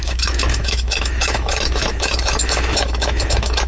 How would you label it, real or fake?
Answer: fake